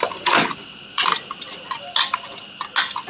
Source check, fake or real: real